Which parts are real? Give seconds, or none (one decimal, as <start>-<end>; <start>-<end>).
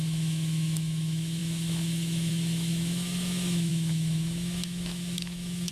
none